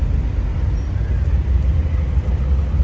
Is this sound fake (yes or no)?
no